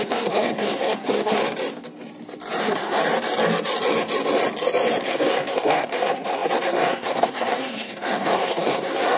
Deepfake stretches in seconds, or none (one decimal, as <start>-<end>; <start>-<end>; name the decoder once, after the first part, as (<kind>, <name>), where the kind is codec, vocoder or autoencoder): 0.0-1.4 (codec, SNAC); 2.6-3.0; 5.0-9.2